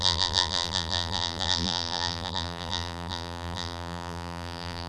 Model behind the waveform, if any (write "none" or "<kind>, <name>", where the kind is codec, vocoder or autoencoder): vocoder, BigVGAN v2